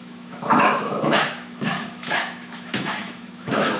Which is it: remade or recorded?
remade